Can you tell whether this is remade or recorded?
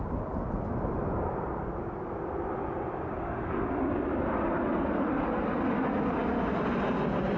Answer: recorded